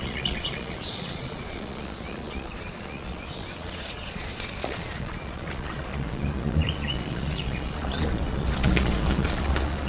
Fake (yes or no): yes